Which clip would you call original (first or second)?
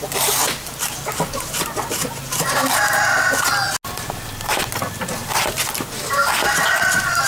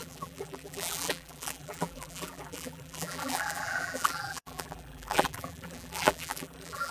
first